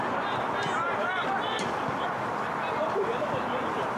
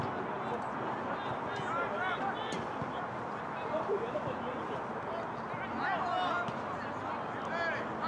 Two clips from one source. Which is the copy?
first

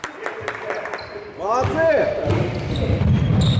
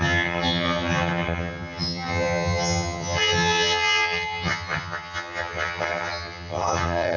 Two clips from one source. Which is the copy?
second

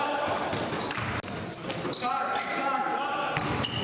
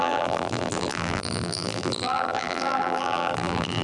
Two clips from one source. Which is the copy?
second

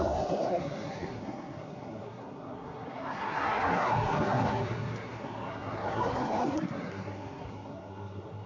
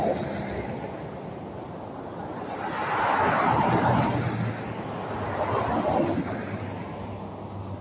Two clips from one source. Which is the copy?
first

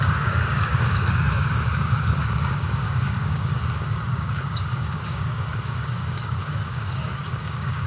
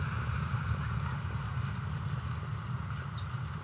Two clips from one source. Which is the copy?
first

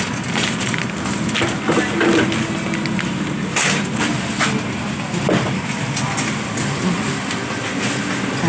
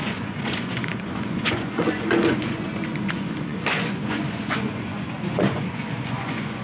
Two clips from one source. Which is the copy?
second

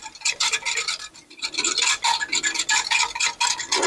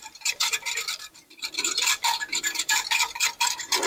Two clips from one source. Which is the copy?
second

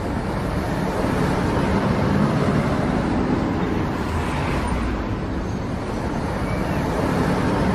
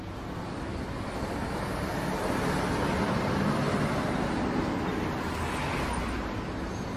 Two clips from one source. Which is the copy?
first